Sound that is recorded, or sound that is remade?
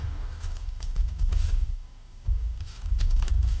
remade